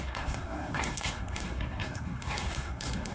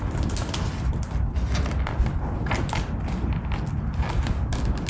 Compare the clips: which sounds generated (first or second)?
first